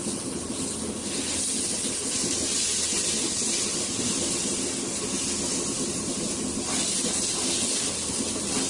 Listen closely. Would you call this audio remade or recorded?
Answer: recorded